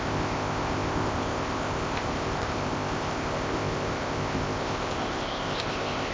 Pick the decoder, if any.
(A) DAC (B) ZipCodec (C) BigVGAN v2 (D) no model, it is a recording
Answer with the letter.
B